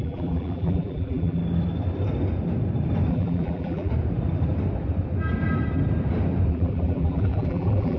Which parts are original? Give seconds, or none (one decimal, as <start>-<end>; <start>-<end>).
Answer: 1.4-3.1; 3.9-6.5